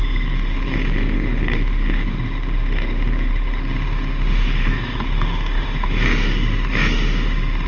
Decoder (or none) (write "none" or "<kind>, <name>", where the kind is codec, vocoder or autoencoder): autoencoder, DAC-VAE